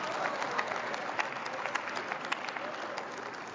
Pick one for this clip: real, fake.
real